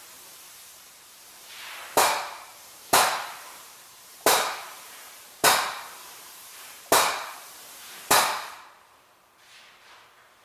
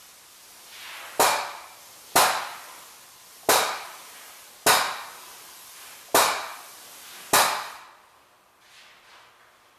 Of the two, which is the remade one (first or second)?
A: first